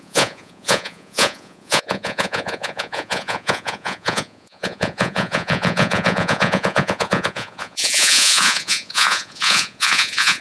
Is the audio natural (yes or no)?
no